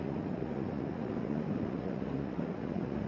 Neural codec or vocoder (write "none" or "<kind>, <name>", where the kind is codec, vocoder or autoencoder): vocoder, Vocos